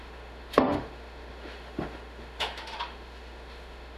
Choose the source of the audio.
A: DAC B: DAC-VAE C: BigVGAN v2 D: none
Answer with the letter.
B